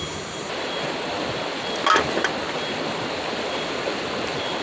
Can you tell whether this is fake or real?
real